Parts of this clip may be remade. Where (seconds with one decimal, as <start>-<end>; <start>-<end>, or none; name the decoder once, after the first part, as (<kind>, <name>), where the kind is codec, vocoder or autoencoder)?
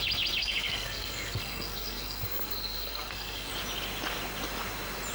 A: 0.4-3.5 (codec, SNAC)